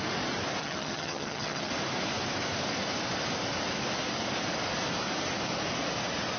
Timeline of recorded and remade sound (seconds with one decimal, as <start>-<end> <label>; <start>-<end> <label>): 0.0-0.6 recorded; 0.6-1.7 remade; 1.7-6.4 recorded